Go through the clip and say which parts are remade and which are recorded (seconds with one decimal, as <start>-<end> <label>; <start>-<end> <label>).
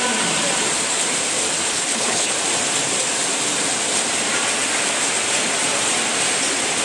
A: 0.0-1.7 recorded; 1.7-2.3 remade; 2.3-6.8 recorded